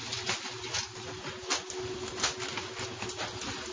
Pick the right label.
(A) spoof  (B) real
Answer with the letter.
B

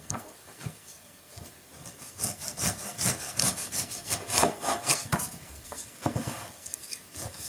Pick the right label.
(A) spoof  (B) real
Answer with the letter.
A